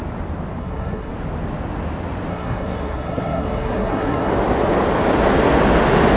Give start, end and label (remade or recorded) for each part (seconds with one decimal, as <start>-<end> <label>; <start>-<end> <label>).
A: 0.0-0.6 recorded; 0.6-1.1 remade; 1.1-2.3 recorded; 2.3-4.3 remade; 4.3-6.2 recorded